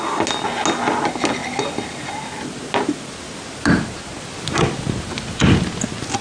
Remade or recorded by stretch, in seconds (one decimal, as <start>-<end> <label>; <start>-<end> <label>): 0.0-6.2 recorded